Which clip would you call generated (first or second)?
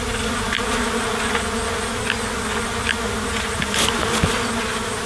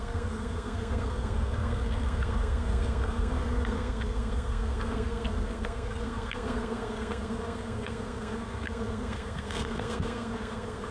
second